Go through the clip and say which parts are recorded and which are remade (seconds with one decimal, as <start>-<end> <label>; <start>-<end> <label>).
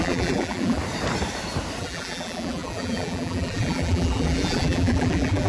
0.0-0.8 remade; 0.8-1.8 recorded; 1.8-5.5 remade